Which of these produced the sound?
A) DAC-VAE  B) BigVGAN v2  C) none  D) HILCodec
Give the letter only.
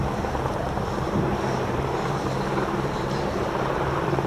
B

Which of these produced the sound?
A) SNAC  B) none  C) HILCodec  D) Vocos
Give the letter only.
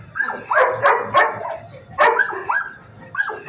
B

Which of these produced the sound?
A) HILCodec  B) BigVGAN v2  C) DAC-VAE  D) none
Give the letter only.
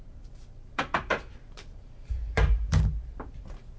B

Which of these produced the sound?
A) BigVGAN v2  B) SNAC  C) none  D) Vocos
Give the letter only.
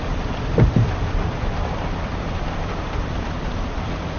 A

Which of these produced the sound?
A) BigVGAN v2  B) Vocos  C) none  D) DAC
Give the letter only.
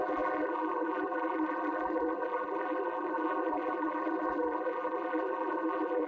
A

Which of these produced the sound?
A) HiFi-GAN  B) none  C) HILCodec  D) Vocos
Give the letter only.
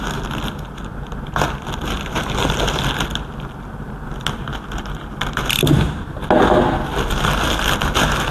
B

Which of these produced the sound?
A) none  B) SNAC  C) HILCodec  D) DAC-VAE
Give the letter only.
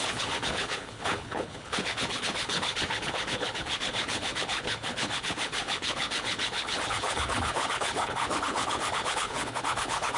C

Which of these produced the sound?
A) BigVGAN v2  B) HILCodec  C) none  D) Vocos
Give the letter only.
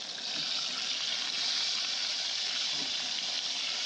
C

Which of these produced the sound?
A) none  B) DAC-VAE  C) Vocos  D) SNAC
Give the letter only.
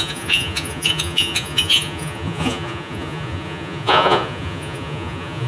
C